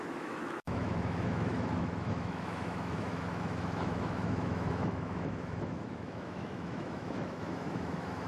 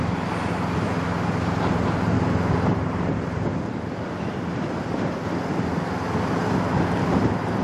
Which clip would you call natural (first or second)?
second